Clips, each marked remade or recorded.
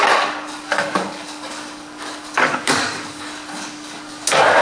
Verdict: remade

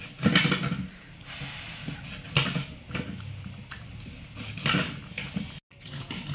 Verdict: recorded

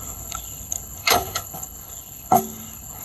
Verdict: remade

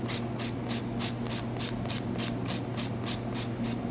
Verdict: recorded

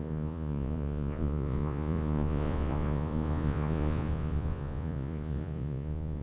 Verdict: remade